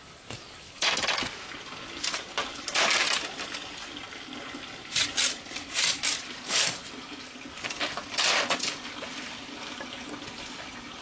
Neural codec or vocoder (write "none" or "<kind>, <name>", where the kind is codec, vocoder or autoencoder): none